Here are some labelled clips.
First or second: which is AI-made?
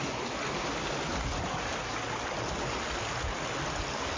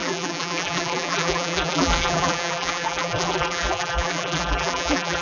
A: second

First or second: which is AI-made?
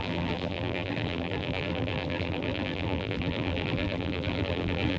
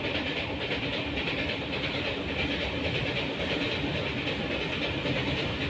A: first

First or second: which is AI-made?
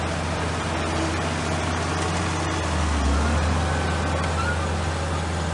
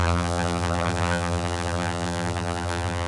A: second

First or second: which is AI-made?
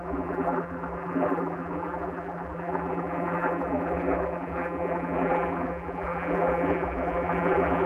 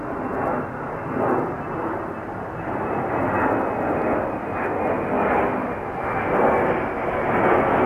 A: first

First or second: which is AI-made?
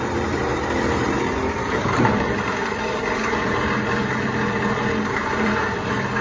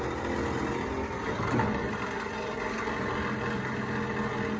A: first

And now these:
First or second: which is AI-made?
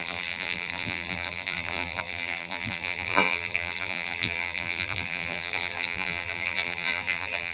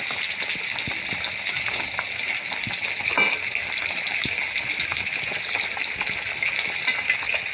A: first